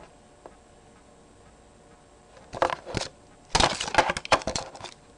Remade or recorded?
recorded